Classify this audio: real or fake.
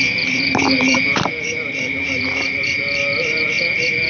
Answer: fake